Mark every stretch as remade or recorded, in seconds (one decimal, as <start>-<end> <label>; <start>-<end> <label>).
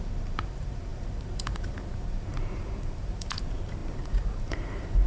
0.0-5.1 remade